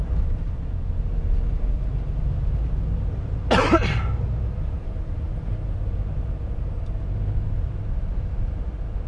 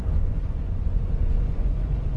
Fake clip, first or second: second